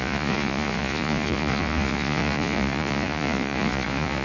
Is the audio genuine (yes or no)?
no